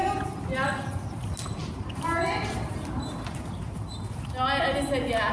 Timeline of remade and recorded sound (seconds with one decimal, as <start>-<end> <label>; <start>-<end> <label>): 0.0-1.6 recorded; 1.6-4.3 remade; 4.3-5.3 recorded